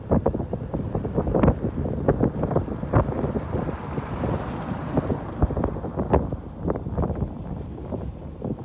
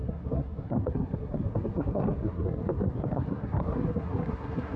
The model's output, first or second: second